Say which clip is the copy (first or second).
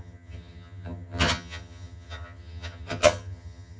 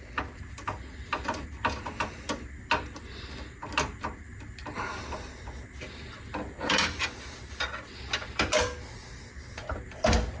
first